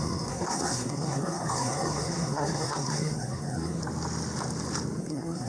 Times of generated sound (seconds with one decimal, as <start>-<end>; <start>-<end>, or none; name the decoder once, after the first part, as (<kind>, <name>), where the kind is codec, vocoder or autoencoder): 0.0-3.8 (codec, SNAC); 5.0-5.5